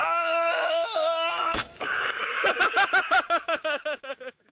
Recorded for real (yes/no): no